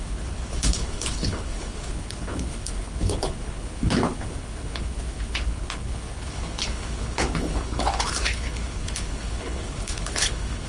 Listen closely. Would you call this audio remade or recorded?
remade